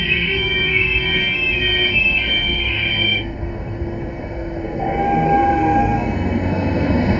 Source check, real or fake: fake